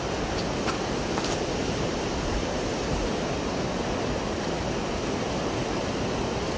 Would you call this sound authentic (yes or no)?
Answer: yes